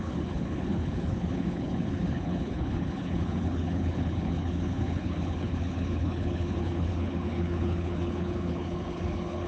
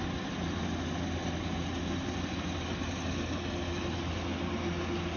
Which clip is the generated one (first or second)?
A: first